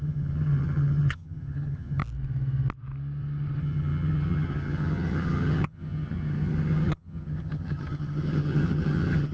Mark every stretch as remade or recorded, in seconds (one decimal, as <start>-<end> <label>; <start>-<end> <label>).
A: 0.0-2.0 remade; 2.0-3.6 recorded; 3.6-9.3 remade